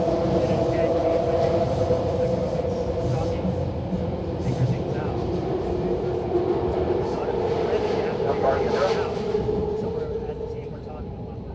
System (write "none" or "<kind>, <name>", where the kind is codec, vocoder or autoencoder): none